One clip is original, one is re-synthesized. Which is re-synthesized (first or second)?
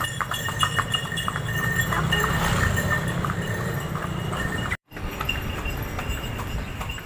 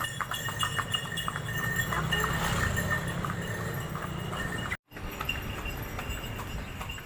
first